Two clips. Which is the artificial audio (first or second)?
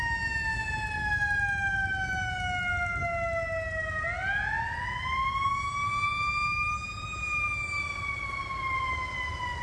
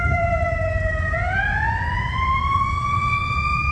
second